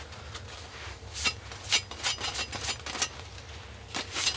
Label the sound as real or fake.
real